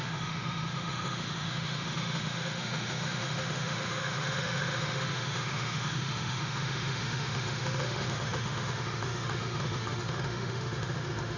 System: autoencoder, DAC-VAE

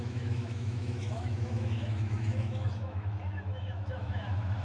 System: autoencoder, DAC-VAE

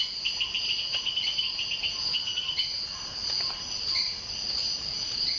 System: none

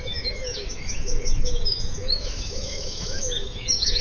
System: autoencoder, DAC-VAE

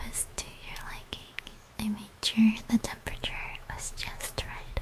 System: autoencoder, DAC-VAE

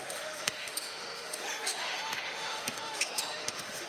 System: autoencoder, DAC-VAE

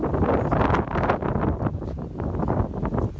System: none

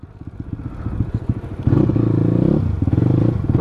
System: none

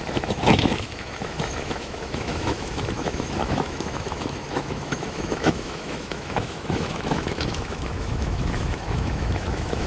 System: autoencoder, DAC-VAE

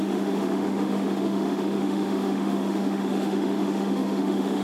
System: autoencoder, DAC-VAE